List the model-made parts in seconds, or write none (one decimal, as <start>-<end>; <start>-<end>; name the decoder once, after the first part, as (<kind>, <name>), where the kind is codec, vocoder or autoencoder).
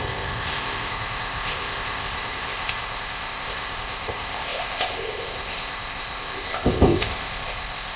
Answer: 0.0-8.0 (codec, ZipCodec)